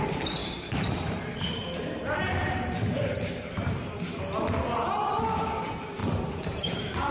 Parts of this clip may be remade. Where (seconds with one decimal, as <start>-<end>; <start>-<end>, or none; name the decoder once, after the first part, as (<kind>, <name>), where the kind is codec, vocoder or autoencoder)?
0.4-3.9 (vocoder, BigVGAN v2); 6.0-7.1